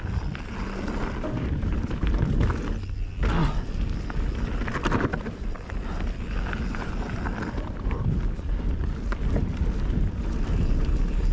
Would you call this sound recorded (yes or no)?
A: yes